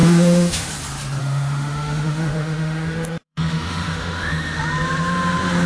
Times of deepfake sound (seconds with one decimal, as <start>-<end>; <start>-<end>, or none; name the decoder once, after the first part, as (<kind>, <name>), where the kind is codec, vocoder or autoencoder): 0.0-0.7 (autoencoder, DAC-VAE); 1.2-4.6